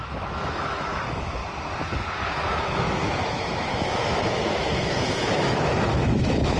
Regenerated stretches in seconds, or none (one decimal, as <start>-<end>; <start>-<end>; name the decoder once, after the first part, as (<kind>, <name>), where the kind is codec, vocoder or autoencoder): 0.0-1.4 (autoencoder, DAC-VAE); 2.5-6.6

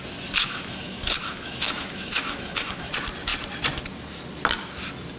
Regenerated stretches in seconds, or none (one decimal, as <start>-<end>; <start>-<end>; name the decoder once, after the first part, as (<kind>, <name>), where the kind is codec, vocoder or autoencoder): 0.4-2.9 (autoencoder, DAC-VAE)

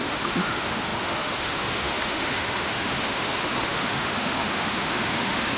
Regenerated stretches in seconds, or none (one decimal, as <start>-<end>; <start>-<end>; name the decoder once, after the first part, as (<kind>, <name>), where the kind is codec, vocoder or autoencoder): 0.0-5.6 (autoencoder, DAC-VAE)

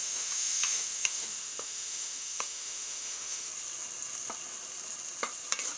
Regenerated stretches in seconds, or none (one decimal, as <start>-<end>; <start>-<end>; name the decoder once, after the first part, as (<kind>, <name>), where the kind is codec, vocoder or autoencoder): 0.0-3.5 (autoencoder, DAC-VAE)

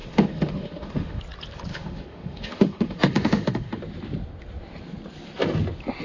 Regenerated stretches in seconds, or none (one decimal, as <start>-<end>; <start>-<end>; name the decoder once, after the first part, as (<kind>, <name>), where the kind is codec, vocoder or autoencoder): 0.0-1.2 (autoencoder, DAC-VAE); 1.7-3.8

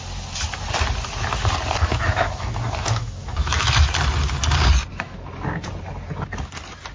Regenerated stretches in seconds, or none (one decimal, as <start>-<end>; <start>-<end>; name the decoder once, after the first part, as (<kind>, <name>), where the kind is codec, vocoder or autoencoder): 1.8-3.9 (autoencoder, DAC-VAE); 4.9-5.7

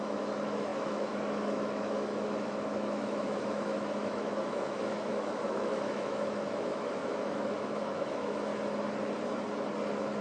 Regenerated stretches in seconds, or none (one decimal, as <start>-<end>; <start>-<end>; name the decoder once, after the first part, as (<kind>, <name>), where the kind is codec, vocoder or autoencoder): 0.0-8.5 (autoencoder, DAC-VAE)